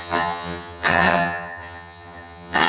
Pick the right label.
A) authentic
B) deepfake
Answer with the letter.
B